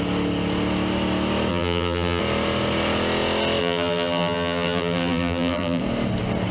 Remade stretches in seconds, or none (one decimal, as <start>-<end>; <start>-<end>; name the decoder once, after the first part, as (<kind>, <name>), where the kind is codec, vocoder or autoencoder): 1.5-2.2 (vocoder, BigVGAN v2); 3.6-5.8